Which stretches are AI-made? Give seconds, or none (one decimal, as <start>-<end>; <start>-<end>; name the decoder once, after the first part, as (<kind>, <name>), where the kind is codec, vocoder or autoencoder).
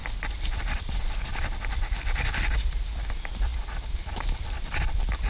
0.0-2.3 (vocoder, BigVGAN v2)